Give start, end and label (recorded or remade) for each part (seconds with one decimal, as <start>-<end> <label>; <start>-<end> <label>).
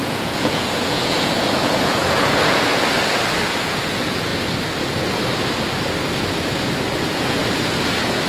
0.0-2.7 remade; 2.7-3.6 recorded; 3.6-4.3 remade; 4.3-6.9 recorded; 6.9-7.4 remade; 7.4-8.3 recorded